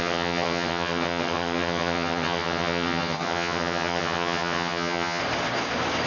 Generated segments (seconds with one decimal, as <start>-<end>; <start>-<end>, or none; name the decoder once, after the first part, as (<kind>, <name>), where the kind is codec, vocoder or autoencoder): 0.0-5.2 (vocoder, HiFi-GAN)